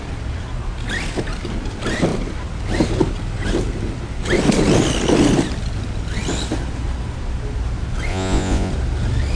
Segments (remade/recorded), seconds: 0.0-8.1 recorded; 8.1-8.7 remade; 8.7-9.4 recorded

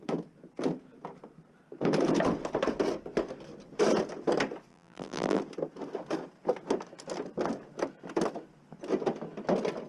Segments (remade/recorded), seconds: 0.0-4.7 recorded; 4.7-5.4 remade; 5.4-9.9 recorded

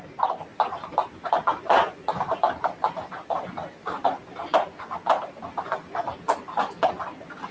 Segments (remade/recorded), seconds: 0.0-4.4 remade; 4.4-6.9 recorded; 6.9-7.5 remade

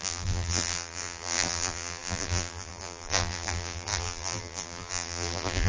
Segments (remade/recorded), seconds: 0.0-5.7 remade

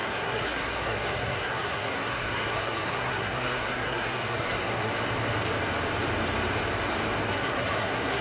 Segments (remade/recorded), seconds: 0.0-4.9 remade; 4.9-7.3 recorded; 7.3-8.2 remade

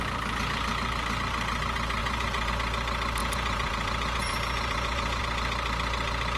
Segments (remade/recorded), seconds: 0.0-2.0 recorded; 2.0-2.5 remade; 2.5-3.2 recorded; 3.2-5.2 remade; 5.2-6.4 recorded